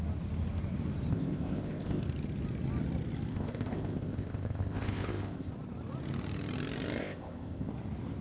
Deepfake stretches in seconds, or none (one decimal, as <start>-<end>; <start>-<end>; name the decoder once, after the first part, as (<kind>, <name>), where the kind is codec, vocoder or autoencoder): 1.1-2.0 (codec, ZipCodec); 3.3-5.5; 7.0-7.7